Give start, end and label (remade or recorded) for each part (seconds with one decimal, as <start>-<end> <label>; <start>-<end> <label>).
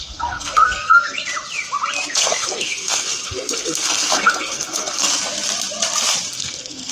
0.0-1.2 remade; 1.2-2.1 recorded; 2.1-5.1 remade; 5.1-6.3 recorded; 6.3-6.9 remade